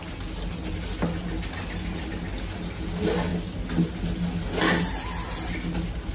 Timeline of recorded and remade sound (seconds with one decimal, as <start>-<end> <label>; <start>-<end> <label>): 0.0-6.1 recorded